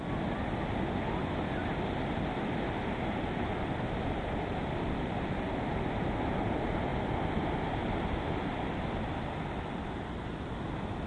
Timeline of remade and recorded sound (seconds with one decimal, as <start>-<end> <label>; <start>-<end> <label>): 0.0-11.1 recorded

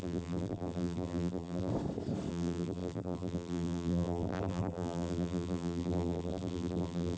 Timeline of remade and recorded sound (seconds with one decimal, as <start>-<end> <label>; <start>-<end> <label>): 0.0-1.7 remade; 1.7-2.3 recorded; 2.3-7.2 remade